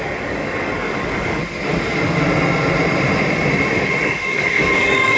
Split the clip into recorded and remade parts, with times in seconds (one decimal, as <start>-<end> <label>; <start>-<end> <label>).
0.0-1.4 remade; 1.4-4.0 recorded; 4.0-5.2 remade